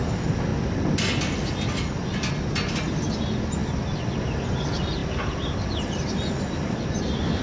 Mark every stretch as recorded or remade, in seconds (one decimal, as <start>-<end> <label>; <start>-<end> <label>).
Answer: 0.0-7.4 recorded